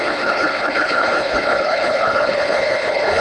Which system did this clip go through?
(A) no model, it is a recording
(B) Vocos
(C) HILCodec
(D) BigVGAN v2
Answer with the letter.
C